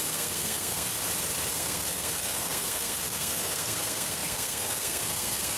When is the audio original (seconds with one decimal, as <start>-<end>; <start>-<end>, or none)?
0.9-1.5